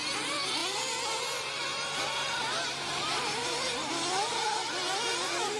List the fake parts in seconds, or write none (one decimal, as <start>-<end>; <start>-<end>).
none